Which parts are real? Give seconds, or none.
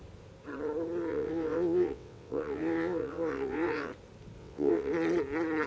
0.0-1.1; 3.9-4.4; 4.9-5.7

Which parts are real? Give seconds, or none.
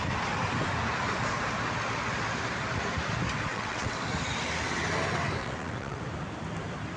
0.0-3.5; 4.0-5.4; 6.0-7.0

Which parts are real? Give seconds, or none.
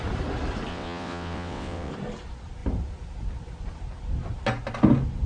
0.0-0.7; 1.9-5.3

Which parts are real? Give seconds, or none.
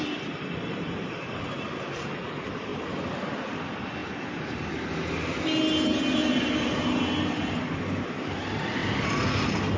0.0-9.8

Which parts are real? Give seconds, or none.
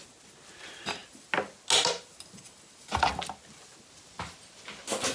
0.0-5.1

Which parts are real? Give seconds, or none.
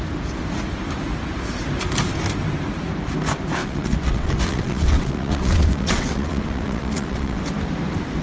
0.0-3.6; 7.4-8.2